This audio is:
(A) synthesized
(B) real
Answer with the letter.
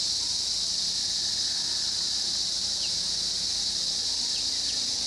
B